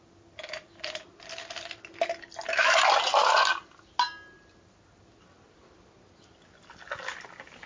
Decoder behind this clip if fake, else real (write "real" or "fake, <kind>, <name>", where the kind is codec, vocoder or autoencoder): real